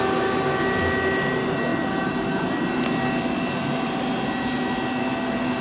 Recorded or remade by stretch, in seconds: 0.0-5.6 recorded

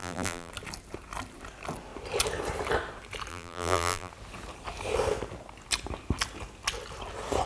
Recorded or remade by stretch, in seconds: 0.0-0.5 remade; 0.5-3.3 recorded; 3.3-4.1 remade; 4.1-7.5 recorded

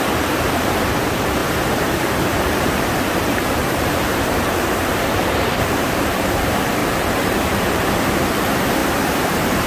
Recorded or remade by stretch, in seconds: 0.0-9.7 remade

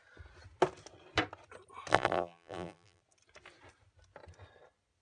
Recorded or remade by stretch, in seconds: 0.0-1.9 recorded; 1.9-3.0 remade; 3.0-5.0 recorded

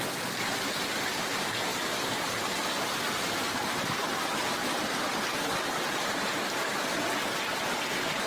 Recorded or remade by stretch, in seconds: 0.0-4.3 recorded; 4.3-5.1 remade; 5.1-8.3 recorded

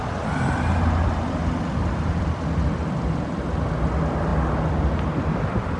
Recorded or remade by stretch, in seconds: 0.0-1.8 recorded; 1.8-3.3 remade; 3.3-5.8 recorded